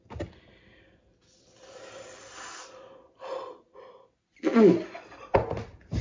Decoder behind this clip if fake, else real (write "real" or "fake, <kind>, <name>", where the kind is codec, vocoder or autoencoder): real